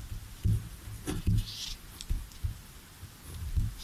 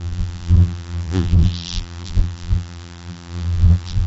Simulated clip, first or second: second